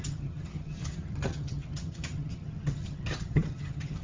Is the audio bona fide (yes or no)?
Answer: no